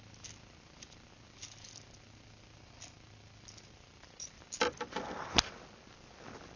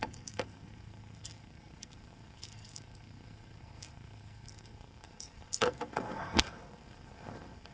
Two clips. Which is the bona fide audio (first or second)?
first